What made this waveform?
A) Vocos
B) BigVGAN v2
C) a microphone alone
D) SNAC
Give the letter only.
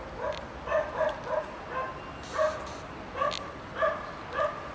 C